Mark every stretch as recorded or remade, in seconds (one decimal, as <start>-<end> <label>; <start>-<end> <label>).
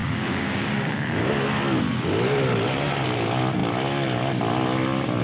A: 0.0-1.3 remade; 1.3-5.2 recorded